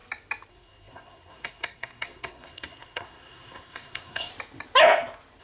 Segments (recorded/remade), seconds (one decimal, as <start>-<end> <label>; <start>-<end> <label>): 0.0-0.5 recorded; 0.5-4.3 remade; 4.3-5.4 recorded